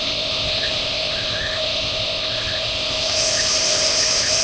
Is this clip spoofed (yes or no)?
yes